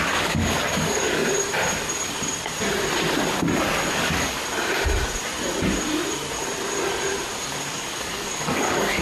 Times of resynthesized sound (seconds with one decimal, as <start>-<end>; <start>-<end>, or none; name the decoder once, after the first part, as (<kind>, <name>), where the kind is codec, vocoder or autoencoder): 0.0-1.2 (codec, DAC); 3.9-4.4; 7.6-9.0